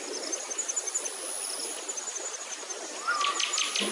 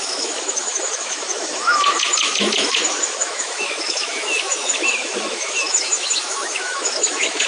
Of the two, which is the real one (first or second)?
first